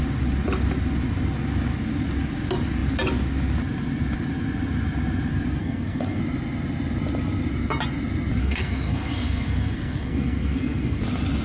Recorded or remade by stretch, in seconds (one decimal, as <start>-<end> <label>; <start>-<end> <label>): 0.0-5.6 recorded; 5.6-6.2 remade; 6.2-8.4 recorded; 8.4-11.0 remade; 11.0-11.4 recorded